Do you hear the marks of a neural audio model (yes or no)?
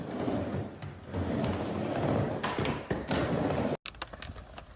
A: no